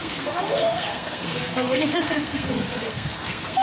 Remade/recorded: remade